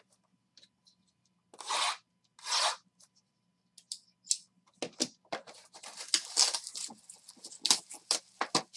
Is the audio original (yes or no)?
yes